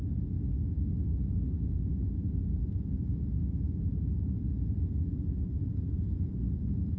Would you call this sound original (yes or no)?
yes